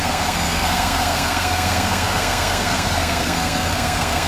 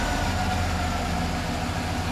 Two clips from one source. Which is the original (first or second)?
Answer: second